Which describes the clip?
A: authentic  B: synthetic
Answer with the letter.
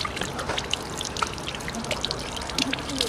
A